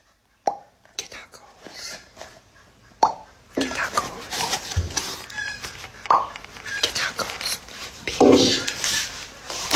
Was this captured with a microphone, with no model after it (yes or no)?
no